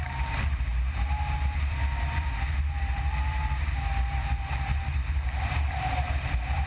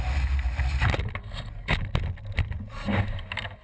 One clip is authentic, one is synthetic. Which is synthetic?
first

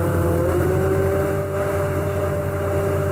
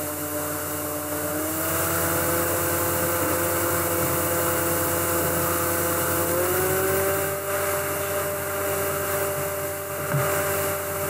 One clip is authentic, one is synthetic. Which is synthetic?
first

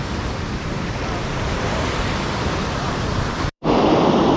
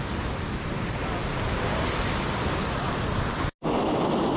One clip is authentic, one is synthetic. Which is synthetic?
first